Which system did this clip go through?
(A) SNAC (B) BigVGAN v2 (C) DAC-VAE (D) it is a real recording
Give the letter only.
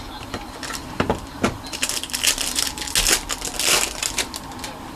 D